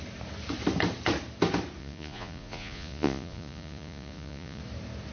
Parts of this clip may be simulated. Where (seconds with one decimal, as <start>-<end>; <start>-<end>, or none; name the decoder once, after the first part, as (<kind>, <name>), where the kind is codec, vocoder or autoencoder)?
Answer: 1.8-4.6 (vocoder, Vocos)